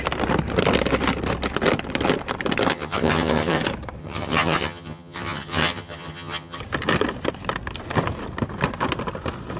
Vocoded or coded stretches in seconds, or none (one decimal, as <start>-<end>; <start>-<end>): 2.7-3.6; 4.0-6.6